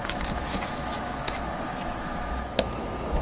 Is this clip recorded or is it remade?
remade